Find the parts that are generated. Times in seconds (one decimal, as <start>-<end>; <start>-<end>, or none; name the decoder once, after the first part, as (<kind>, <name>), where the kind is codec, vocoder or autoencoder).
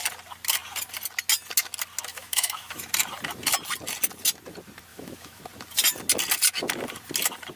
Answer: 2.1-2.9 (autoencoder, DAC-VAE); 4.9-5.4